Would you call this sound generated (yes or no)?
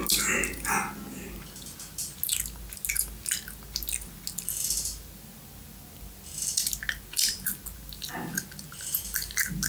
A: no